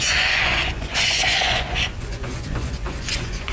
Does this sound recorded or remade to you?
remade